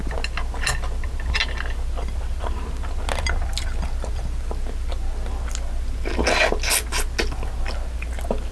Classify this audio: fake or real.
real